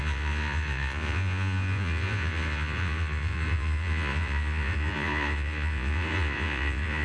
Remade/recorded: remade